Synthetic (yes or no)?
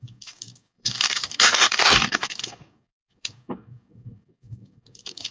yes